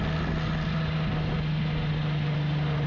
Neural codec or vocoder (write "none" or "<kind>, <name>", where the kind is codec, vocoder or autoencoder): none